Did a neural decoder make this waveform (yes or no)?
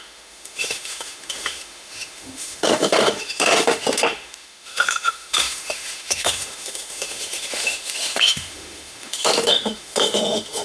yes